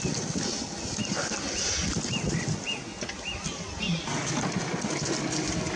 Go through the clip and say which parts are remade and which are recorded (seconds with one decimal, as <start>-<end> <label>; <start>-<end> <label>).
0.0-5.8 recorded